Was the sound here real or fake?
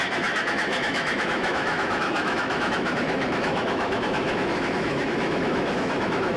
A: fake